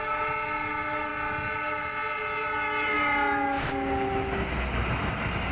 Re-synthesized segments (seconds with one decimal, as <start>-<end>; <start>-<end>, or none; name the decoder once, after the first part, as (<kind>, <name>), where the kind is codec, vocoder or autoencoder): none